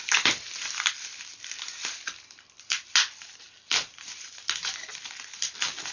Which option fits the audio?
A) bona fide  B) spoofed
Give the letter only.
A